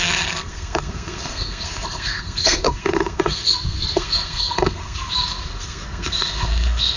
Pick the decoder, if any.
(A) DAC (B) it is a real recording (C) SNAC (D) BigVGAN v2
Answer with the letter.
C